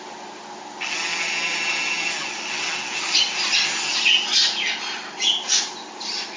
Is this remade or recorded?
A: recorded